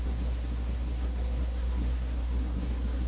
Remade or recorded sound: remade